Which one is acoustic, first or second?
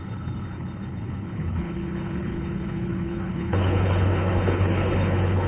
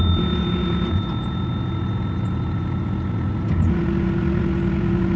second